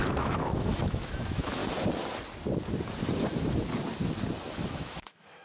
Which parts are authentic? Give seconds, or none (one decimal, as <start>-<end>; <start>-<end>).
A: 1.6-4.8